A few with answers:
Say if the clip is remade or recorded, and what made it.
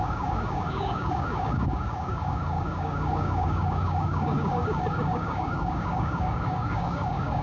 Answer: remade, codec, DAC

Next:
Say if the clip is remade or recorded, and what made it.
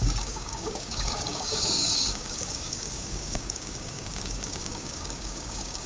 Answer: remade, codec, DAC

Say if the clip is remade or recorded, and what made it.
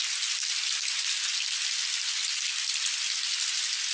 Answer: recorded